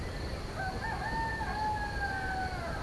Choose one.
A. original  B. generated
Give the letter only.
A